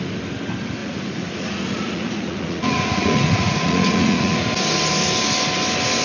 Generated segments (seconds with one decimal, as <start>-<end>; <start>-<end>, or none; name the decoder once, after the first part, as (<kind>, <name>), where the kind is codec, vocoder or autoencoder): 0.8-4.4 (vocoder, Vocos)